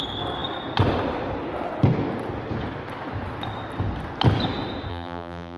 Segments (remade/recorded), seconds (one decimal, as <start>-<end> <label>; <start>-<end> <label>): 0.0-4.9 recorded; 4.9-5.6 remade